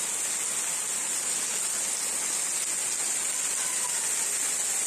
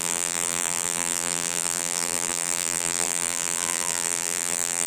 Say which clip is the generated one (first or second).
second